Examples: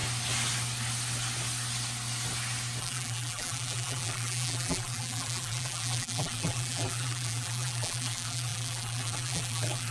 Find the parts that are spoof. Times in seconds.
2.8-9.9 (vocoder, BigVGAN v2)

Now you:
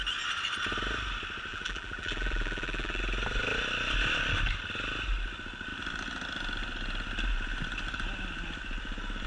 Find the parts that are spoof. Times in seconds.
1.5-3.0 (vocoder, BigVGAN v2)

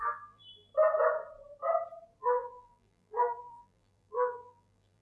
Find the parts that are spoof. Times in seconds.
0.0-0.7 (vocoder, BigVGAN v2); 2.2-5.0